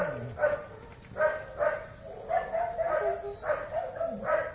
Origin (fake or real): real